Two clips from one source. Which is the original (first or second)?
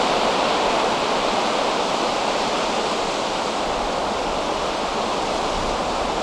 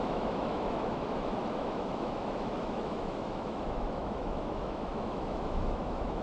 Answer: first